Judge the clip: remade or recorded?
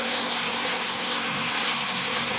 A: remade